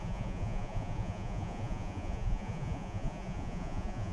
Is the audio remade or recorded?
remade